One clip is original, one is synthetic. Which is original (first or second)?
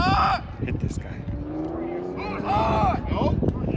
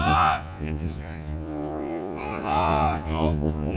first